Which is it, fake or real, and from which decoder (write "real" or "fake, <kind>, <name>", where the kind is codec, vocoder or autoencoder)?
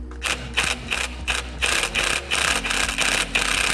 real